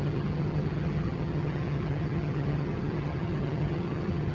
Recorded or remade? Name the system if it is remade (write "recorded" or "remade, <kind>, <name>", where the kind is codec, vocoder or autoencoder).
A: remade, vocoder, HiFi-GAN